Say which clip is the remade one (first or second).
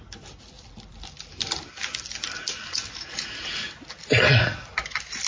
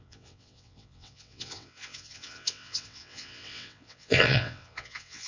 second